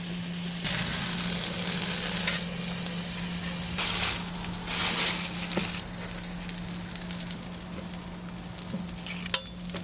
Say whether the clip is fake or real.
real